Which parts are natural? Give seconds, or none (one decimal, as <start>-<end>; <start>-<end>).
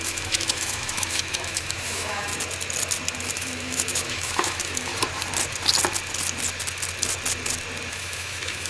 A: 2.3-3.3; 4.9-7.9